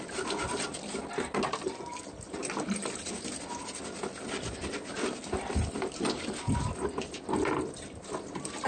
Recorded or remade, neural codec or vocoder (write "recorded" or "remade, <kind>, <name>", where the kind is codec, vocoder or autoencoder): recorded